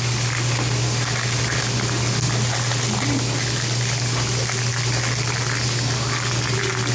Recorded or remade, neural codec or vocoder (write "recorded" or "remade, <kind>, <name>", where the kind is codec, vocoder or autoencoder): recorded